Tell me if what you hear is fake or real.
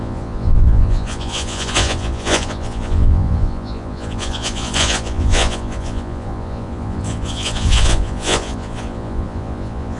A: fake